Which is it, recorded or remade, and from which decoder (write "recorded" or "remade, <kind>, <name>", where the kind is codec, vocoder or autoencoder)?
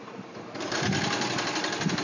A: recorded